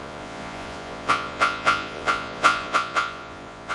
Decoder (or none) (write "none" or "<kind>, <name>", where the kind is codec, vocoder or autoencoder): vocoder, Vocos